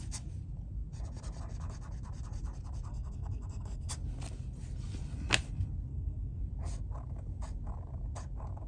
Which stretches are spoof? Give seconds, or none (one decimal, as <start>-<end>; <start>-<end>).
2.9-3.9; 5.9-6.4